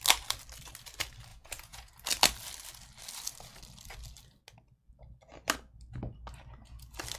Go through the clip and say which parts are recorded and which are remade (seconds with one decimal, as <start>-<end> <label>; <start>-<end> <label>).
0.0-1.3 recorded; 1.3-1.9 remade; 1.9-7.2 recorded